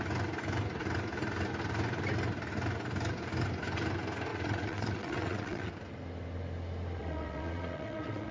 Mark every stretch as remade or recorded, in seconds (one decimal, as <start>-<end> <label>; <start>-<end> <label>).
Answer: 0.0-4.3 recorded; 4.3-5.7 remade; 5.7-7.0 recorded; 7.0-8.3 remade